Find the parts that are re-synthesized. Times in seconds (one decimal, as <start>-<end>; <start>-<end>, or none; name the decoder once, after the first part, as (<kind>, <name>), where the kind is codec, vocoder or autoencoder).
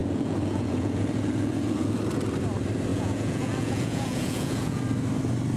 0.0-2.0 (vocoder, Vocos); 2.9-4.8